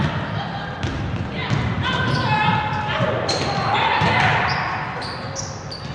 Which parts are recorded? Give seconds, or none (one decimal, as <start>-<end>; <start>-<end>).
0.0-1.4; 3.7-4.3; 5.1-5.9